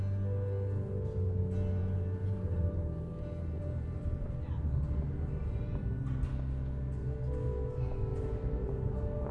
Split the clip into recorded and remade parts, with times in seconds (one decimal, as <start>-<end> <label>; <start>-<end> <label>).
0.0-1.8 recorded; 1.8-6.2 remade; 6.2-8.1 recorded; 8.1-9.3 remade